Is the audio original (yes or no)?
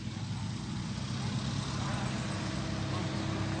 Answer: yes